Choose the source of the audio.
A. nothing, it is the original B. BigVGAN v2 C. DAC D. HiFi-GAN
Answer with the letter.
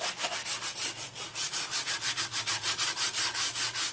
A